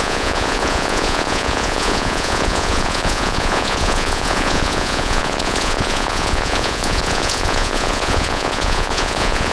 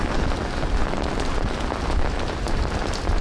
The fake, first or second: first